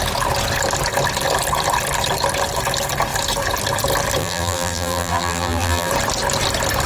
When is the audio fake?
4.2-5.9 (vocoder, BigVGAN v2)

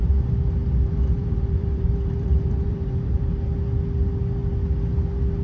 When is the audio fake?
0.6-3.3 (vocoder, BigVGAN v2)

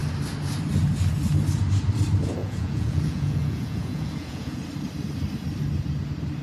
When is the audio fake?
2.4-4.6 (vocoder, Vocos)

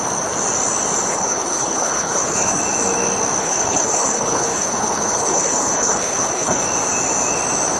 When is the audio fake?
1.1-2.6 (codec, HILCodec); 3.4-6.6

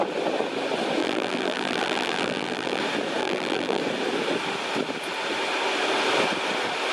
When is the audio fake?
1.0-2.8 (vocoder, BigVGAN v2); 3.2-3.8

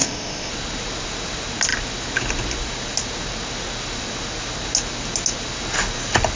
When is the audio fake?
0.0-0.5 (codec, ZipCodec)